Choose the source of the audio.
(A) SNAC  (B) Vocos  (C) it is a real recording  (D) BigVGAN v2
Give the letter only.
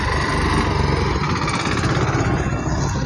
C